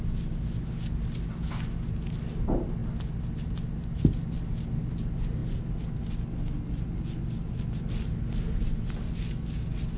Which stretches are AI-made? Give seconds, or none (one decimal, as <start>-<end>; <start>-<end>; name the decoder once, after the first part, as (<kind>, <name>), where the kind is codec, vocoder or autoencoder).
none